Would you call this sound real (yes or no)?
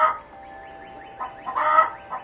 yes